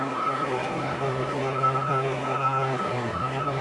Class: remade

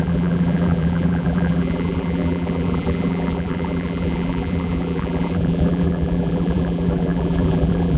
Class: remade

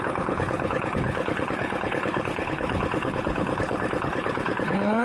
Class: remade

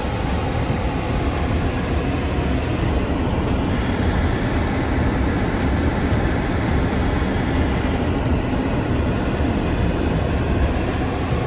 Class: recorded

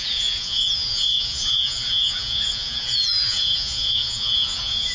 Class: remade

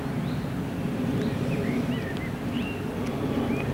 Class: recorded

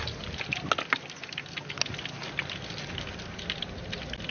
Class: recorded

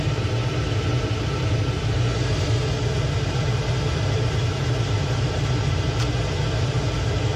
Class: remade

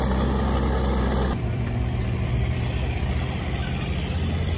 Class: remade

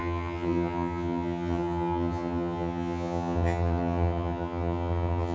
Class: remade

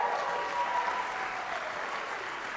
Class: recorded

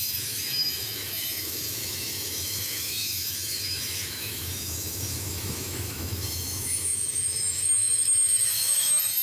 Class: remade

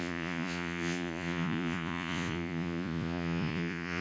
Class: remade